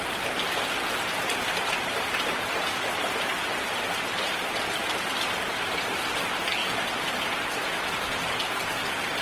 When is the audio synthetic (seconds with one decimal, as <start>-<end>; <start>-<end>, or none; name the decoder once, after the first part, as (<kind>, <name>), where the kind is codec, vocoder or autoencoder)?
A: none